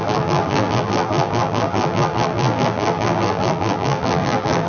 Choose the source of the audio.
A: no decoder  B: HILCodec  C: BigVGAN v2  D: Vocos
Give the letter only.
C